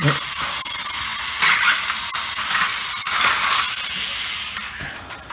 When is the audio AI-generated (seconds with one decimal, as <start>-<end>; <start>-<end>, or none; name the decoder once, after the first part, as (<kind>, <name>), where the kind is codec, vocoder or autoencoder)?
none